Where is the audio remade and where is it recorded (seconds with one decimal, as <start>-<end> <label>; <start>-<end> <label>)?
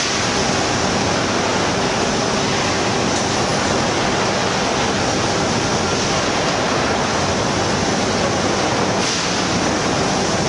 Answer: 0.0-10.5 recorded